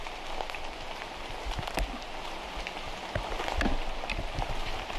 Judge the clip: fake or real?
real